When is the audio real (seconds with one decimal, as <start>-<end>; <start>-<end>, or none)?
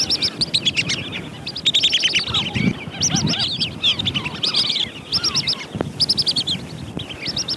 0.0-7.6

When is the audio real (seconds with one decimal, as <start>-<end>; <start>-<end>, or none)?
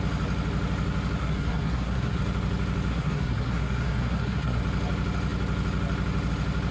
0.0-1.2; 2.2-2.9; 4.6-6.7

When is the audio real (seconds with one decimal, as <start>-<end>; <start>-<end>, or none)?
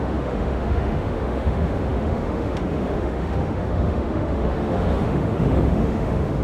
none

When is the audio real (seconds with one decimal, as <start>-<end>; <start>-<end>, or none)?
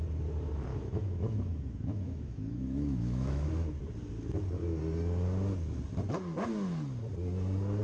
0.0-0.7; 3.5-7.8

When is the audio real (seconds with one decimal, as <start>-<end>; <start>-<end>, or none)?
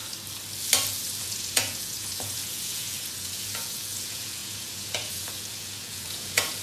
0.0-1.2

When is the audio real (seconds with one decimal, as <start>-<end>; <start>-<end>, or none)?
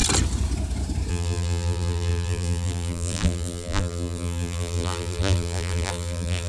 0.0-1.1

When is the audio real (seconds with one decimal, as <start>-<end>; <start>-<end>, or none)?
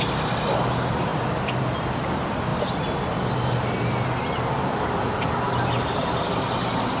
0.0-7.0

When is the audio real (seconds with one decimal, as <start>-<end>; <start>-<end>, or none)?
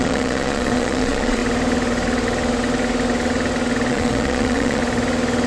1.4-3.9; 4.8-5.5